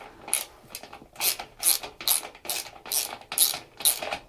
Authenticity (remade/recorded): recorded